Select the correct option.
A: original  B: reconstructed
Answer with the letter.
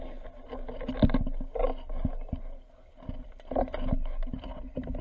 A